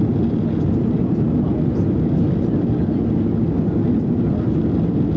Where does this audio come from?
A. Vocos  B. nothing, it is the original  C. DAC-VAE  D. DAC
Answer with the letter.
B